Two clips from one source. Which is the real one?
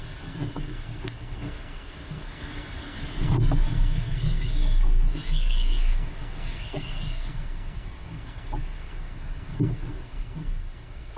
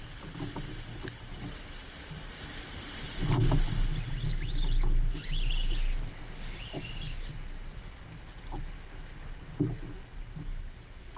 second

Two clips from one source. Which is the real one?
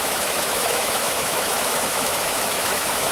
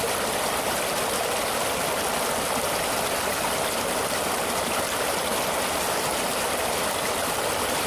second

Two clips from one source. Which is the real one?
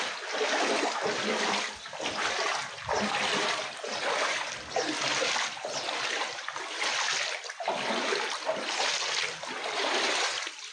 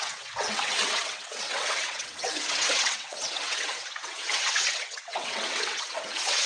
first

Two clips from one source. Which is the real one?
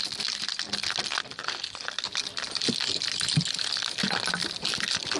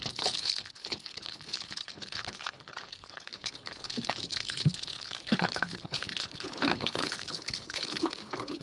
first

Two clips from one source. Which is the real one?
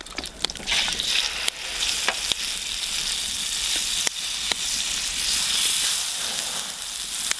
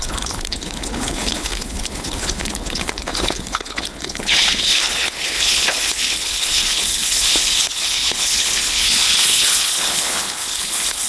first